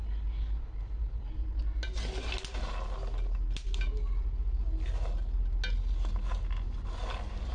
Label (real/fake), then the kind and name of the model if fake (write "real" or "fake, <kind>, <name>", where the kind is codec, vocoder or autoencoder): real